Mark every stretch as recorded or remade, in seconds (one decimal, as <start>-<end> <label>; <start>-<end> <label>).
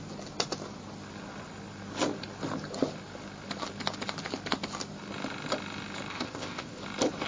0.0-6.1 recorded; 6.1-6.8 remade; 6.8-7.3 recorded